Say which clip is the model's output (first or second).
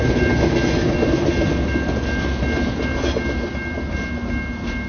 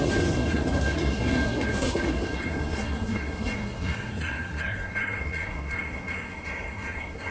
second